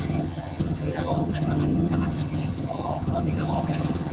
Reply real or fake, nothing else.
fake